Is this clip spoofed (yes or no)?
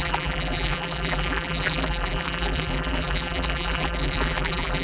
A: yes